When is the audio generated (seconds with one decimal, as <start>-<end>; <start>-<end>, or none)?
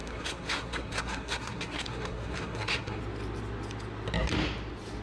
0.0-3.0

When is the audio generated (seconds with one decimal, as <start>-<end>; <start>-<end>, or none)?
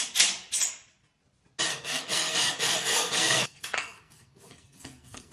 1.7-5.3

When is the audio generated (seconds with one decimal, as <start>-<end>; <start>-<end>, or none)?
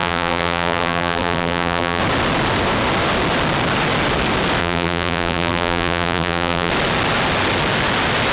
0.0-2.0; 4.6-6.7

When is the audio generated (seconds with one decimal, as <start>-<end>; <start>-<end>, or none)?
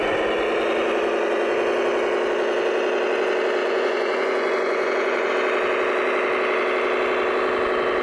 3.6-5.3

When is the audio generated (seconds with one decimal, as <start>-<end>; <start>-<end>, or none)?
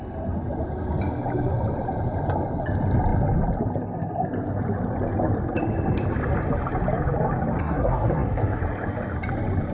7.6-8.6